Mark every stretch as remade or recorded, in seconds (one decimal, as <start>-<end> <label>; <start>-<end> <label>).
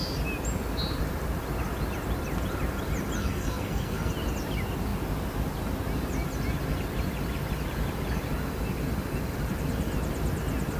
0.0-3.2 recorded; 3.2-4.1 remade; 4.1-10.8 recorded